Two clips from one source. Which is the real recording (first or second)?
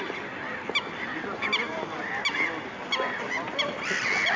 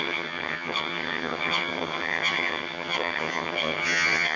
first